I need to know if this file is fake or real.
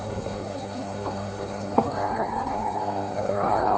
fake